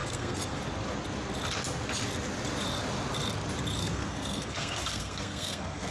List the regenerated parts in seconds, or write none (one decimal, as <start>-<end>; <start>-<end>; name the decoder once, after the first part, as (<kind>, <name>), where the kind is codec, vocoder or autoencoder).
0.0-0.6 (codec, SNAC); 3.8-5.9